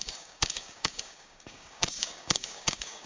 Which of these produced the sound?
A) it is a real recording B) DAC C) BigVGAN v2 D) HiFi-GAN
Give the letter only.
B